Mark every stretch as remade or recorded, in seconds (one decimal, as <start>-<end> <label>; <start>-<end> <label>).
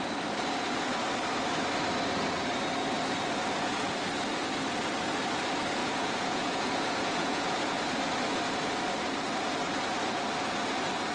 0.0-5.8 recorded; 5.8-7.8 remade; 7.8-11.1 recorded